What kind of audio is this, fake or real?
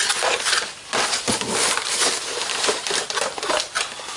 real